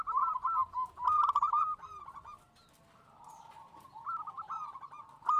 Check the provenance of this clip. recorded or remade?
recorded